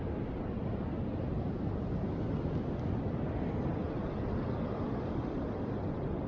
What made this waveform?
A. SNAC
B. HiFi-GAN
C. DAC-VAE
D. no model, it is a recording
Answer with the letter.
D